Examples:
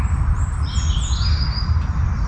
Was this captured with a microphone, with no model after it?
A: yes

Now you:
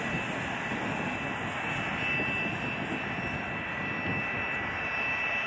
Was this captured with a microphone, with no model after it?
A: yes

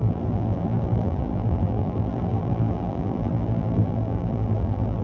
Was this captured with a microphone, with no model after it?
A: no